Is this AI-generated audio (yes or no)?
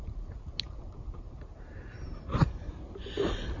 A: no